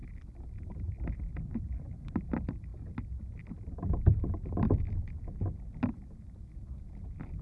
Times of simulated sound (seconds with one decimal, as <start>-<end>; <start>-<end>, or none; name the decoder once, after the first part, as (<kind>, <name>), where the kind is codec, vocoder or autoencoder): 0.0-2.7 (vocoder, BigVGAN v2)

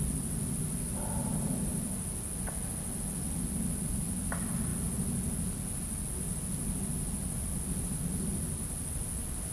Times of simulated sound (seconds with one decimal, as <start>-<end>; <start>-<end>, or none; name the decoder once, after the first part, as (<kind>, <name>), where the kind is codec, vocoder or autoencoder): none

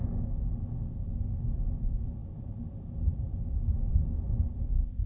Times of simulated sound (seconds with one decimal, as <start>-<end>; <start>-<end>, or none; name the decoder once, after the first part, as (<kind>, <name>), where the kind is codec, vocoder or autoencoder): none

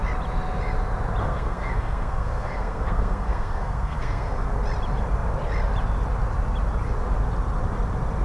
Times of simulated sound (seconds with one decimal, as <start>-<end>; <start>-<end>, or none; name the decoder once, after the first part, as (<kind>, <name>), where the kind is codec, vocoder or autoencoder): 1.2-4.5 (codec, SNAC)

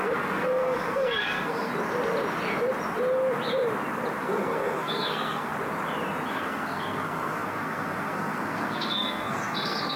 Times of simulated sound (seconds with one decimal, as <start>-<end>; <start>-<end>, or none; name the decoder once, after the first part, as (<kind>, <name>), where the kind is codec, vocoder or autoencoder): 0.0-1.7 (codec, SNAC); 4.2-5.5; 6.3-10.0